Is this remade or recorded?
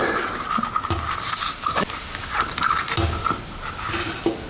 recorded